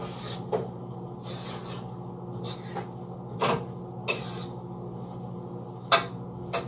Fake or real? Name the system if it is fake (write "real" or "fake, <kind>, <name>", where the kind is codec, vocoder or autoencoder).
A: real